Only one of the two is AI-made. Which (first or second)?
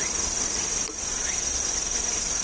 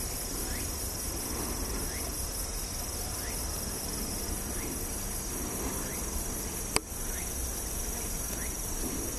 first